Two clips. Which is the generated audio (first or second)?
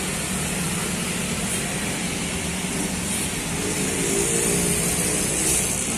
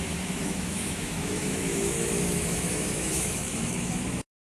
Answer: second